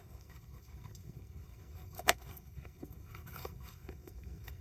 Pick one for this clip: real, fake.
fake